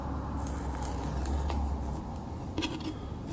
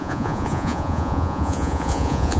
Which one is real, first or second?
first